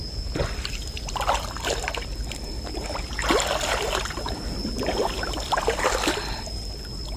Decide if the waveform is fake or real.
real